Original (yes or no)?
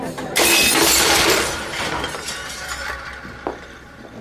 yes